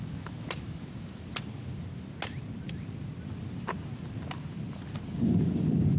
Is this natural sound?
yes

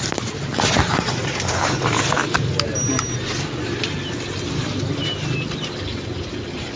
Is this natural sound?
yes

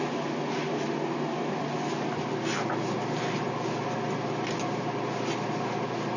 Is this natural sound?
yes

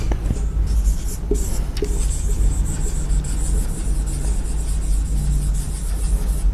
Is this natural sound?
yes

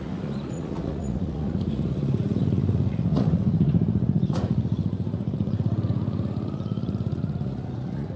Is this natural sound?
no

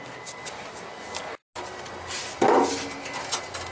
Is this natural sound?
yes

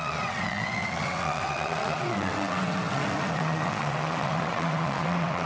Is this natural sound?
no